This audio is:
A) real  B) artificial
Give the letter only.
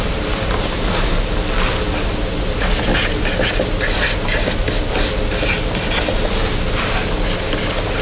A